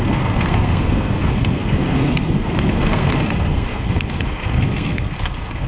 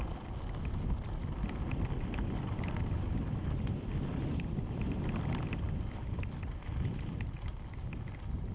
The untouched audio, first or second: second